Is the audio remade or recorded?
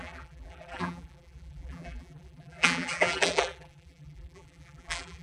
remade